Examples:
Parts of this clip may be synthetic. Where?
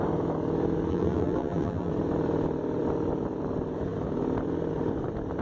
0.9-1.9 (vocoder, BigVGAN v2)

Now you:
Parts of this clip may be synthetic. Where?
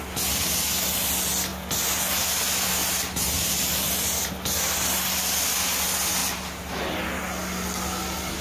2.8-3.9 (vocoder, BigVGAN v2); 6.2-6.7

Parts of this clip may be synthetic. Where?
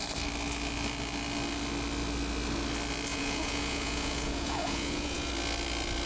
3.1-5.3 (vocoder, Vocos)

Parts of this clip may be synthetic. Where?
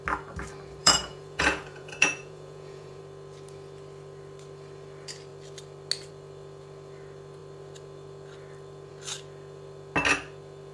0.8-3.0 (vocoder, Vocos)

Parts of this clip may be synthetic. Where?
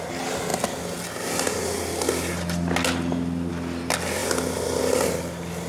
none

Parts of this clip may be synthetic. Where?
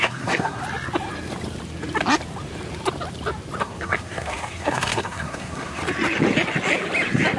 0.0-0.6 (codec, SNAC); 3.6-5.8